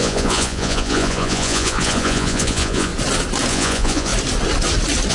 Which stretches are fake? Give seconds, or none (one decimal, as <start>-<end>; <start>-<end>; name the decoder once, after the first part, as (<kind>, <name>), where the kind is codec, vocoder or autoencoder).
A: 0.0-2.9 (vocoder, Vocos); 3.5-4.1